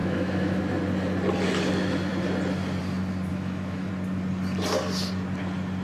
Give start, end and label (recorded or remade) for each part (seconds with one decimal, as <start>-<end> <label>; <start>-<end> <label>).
0.0-0.6 remade; 0.6-3.3 recorded; 3.3-3.9 remade; 3.9-5.8 recorded